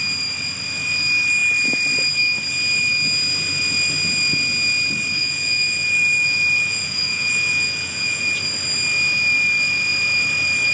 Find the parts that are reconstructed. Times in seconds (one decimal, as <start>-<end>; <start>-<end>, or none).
5.2-8.3